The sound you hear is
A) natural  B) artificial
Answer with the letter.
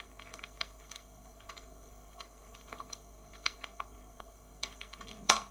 B